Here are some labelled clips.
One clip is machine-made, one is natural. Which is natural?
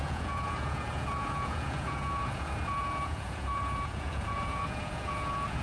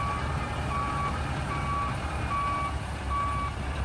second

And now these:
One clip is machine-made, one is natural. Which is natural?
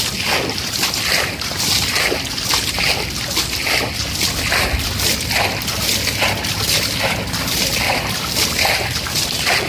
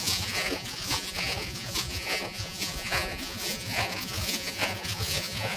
first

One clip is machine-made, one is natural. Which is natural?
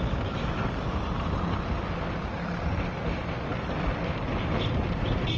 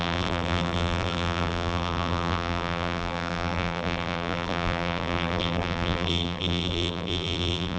first